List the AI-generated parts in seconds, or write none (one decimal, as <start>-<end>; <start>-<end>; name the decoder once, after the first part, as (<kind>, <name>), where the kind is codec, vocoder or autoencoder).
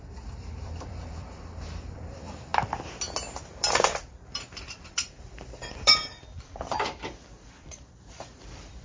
0.0-2.5 (vocoder, BigVGAN v2); 3.4-8.8